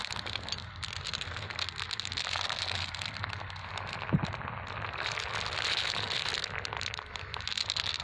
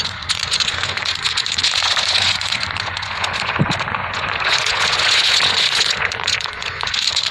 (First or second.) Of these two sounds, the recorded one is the first